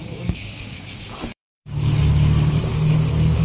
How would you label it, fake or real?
fake